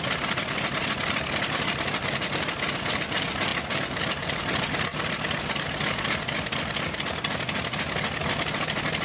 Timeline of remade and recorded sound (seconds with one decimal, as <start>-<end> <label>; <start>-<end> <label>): 0.0-9.0 recorded